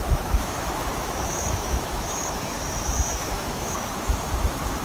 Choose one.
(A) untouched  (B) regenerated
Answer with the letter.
B